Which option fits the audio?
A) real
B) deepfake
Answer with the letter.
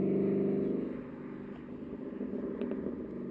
A